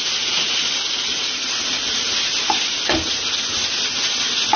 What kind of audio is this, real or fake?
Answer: real